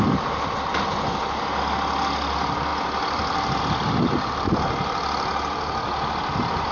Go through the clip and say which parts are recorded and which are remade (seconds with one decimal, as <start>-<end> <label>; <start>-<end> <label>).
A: 0.0-6.7 recorded